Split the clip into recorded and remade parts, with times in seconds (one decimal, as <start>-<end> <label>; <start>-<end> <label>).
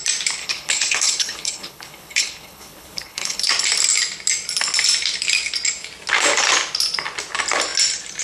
0.0-0.4 recorded; 0.4-3.5 remade; 3.5-8.2 recorded